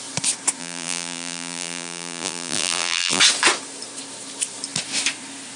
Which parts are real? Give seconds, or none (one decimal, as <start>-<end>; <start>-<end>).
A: 0.0-0.6; 3.2-5.6